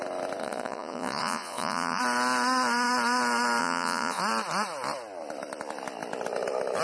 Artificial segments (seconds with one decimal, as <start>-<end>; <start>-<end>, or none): 0.4-2.0; 3.6-4.2